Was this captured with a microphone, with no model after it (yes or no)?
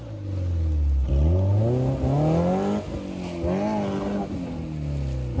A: yes